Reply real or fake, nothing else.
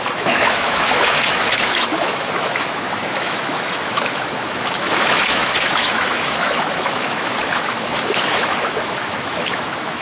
fake